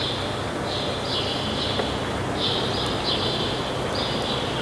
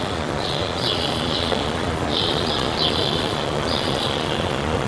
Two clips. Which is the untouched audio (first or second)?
first